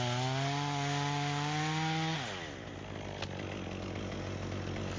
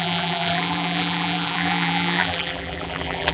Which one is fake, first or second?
second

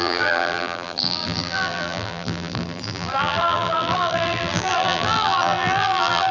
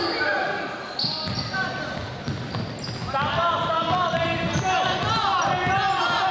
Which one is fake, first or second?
first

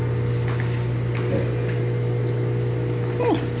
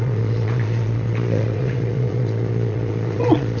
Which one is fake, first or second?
second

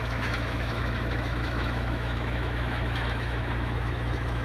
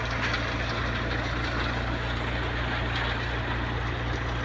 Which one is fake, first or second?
first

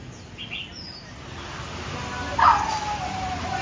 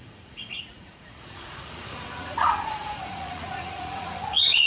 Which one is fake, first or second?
second